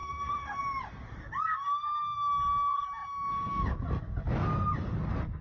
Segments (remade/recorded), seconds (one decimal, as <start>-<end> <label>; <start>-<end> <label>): 0.0-0.6 remade; 0.6-5.4 recorded